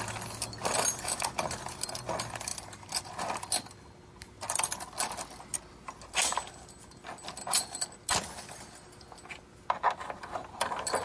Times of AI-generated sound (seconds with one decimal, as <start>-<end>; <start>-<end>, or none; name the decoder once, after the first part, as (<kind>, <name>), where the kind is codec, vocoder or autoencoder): none